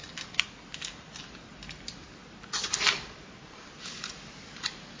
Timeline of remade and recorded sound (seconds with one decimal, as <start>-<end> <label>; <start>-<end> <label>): 0.0-5.0 recorded